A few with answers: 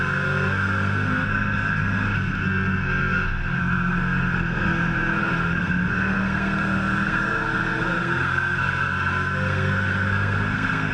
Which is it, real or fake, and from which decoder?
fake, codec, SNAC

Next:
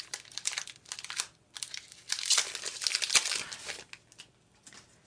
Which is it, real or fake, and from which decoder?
real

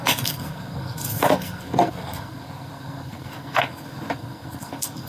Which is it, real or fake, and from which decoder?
fake, codec, SNAC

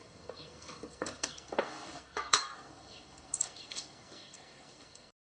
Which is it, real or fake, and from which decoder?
fake, codec, SNAC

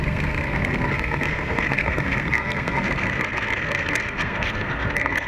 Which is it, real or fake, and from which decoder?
fake, codec, SNAC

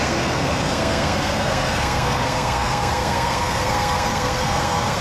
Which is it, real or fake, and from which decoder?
fake, codec, SNAC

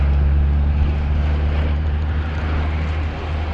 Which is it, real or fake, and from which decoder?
real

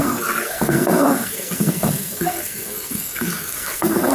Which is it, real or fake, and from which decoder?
fake, codec, SNAC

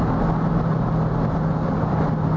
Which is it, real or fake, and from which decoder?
real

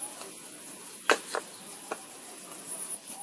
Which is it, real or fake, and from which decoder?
real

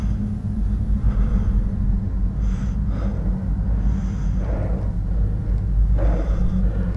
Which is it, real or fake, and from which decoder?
real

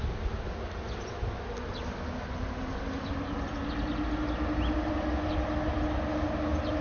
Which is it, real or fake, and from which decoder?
real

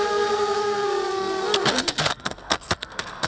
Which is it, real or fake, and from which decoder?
fake, codec, SNAC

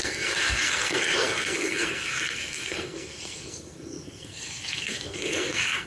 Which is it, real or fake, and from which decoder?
fake, codec, SNAC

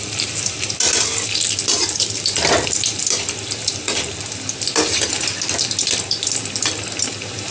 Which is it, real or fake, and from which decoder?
real